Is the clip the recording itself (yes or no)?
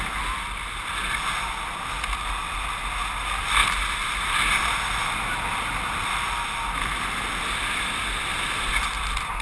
yes